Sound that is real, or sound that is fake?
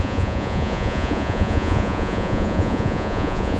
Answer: fake